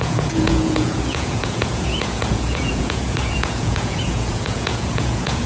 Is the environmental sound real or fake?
fake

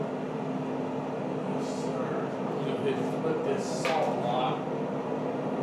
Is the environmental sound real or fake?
real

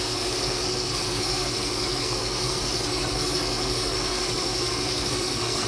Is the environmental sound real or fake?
fake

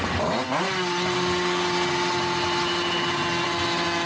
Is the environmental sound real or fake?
real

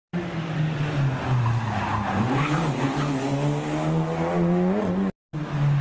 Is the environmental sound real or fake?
real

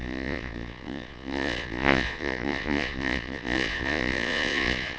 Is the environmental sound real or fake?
fake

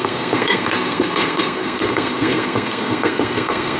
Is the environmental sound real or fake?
fake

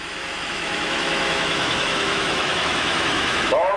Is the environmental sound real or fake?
fake